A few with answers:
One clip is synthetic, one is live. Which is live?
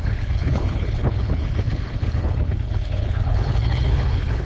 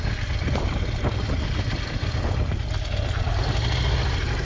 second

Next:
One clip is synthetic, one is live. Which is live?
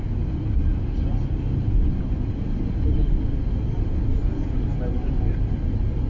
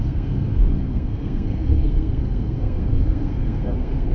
first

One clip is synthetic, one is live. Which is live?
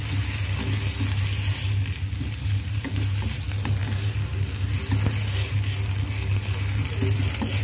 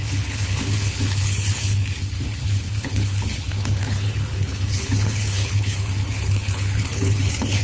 first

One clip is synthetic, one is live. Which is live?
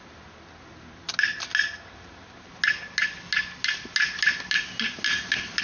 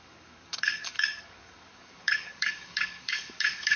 first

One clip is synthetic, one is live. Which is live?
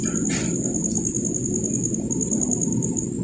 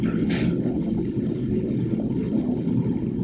first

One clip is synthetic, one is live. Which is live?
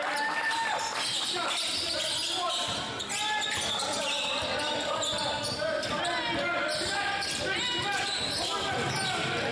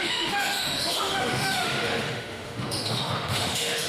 first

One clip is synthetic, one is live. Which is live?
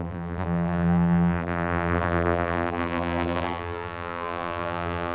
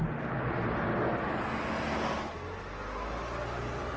second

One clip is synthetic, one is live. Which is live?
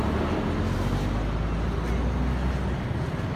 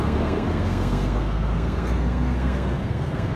first